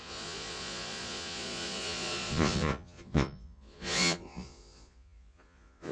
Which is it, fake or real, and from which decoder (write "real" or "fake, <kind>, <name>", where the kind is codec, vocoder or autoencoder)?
fake, vocoder, Vocos